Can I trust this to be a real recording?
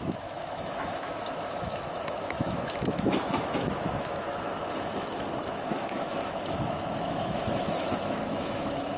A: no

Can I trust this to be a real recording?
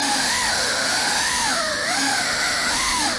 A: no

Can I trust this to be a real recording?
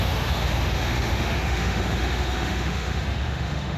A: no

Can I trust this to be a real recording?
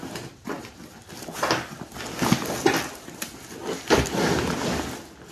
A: yes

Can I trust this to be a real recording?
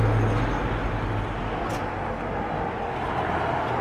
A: yes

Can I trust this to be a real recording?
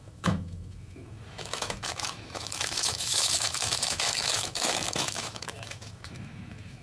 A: no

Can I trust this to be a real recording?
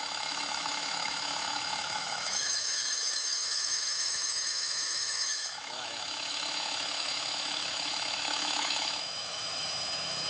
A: no